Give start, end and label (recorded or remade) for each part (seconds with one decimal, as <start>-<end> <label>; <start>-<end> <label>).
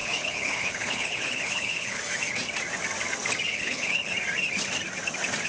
0.0-2.0 remade; 2.0-3.5 recorded; 3.5-4.1 remade; 4.1-5.5 recorded